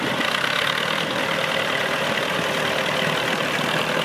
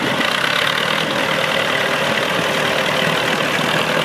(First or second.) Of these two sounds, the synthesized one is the first